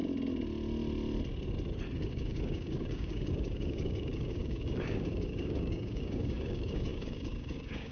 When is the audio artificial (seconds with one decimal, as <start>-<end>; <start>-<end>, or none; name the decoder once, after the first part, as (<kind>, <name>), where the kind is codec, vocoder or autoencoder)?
2.1-7.9 (codec, DAC)